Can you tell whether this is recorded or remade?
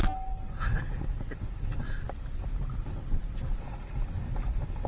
recorded